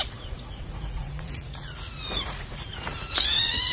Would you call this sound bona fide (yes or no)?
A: no